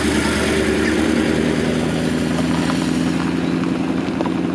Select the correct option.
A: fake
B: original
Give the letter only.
B